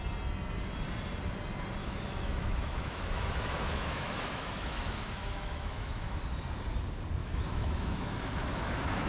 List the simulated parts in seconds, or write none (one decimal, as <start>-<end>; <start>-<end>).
1.8-6.2; 7.2-9.1

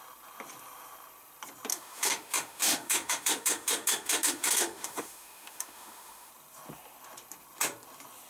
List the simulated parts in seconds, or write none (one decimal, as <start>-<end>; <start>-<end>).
1.7-6.3

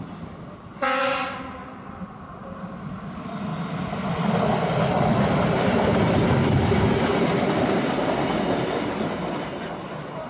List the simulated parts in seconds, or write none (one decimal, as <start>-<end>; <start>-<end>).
none

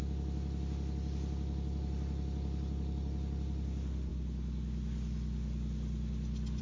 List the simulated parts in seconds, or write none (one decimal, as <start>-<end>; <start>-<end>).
none